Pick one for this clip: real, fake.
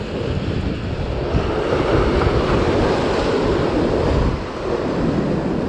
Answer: real